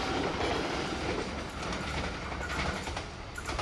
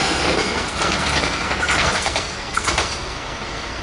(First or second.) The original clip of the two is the first